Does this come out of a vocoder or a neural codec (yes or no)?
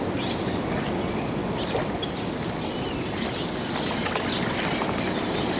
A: no